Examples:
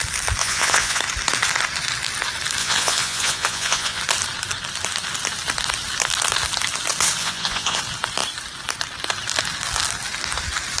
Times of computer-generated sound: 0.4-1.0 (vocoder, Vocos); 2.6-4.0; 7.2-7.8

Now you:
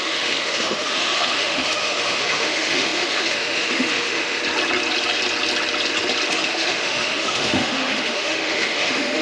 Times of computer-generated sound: 0.0-4.4 (autoencoder, DAC-VAE); 6.3-9.2

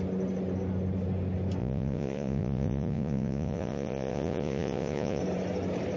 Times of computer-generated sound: 1.6-5.2 (vocoder, Vocos)

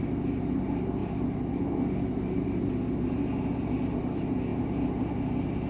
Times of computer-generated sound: none

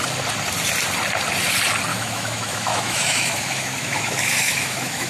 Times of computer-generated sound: 1.9-5.1 (autoencoder, DAC-VAE)

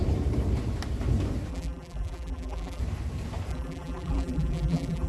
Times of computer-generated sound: 1.5-2.8 (vocoder, BigVGAN v2); 3.5-5.1

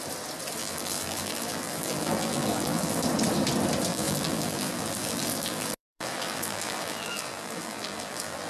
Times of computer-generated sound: 0.6-3.0 (vocoder, BigVGAN v2); 3.9-8.5

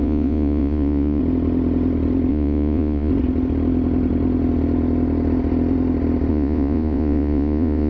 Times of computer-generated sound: 0.0-1.2 (vocoder, Vocos); 2.3-3.1; 6.3-7.9